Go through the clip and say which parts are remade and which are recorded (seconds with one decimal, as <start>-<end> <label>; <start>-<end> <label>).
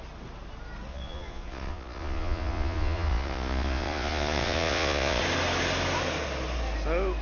0.0-0.9 recorded; 0.9-5.2 remade; 5.2-7.2 recorded